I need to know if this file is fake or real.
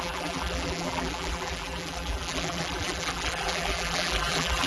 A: fake